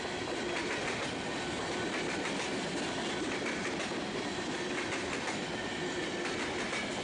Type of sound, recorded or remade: recorded